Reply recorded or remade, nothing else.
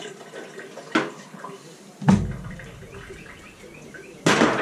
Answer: recorded